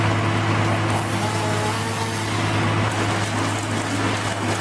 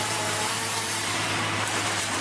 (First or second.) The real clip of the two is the first